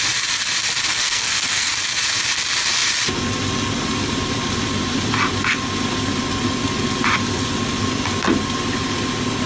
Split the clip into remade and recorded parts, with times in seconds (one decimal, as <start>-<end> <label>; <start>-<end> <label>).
0.0-0.9 recorded; 0.9-1.7 remade; 1.7-9.5 recorded